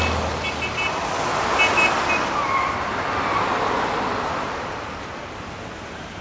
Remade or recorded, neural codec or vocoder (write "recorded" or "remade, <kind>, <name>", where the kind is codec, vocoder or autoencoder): recorded